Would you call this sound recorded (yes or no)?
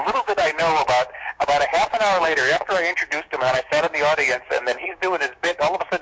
no